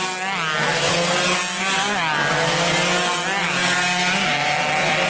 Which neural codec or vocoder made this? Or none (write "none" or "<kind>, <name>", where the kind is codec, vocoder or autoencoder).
none